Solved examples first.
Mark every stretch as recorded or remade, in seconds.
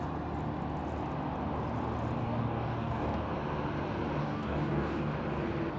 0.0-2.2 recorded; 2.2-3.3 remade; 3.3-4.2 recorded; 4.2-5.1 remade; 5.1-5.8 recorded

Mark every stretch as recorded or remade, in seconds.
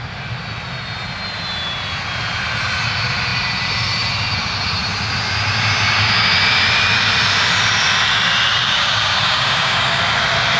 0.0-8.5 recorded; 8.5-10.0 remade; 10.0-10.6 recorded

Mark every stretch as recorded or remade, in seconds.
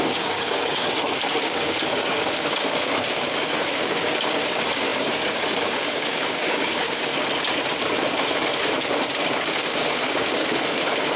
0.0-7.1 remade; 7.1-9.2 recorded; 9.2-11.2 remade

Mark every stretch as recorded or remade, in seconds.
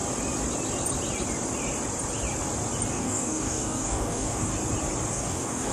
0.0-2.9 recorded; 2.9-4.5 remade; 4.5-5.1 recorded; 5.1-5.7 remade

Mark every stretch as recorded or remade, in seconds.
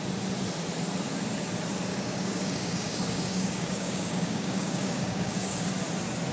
0.0-1.9 recorded; 1.9-5.6 remade; 5.6-6.3 recorded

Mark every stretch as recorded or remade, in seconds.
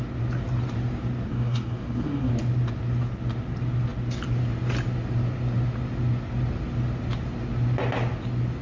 0.0-1.3 recorded; 1.3-2.3 remade; 2.3-8.6 recorded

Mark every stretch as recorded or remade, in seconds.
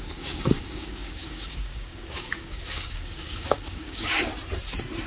0.0-4.3 remade; 4.3-5.1 recorded